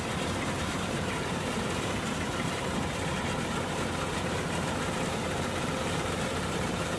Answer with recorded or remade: remade